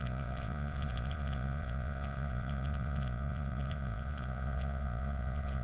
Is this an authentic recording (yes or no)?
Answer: no